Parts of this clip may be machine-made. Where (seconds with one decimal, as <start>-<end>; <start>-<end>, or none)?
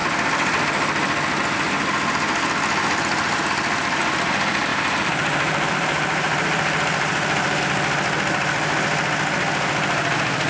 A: 4.7-7.6